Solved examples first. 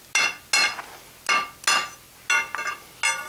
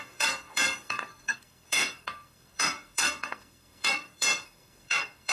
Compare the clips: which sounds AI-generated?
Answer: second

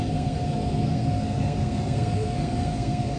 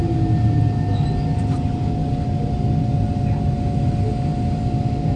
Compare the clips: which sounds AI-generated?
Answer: first